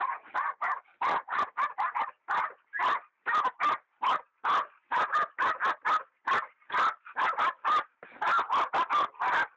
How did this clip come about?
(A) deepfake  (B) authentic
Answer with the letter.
B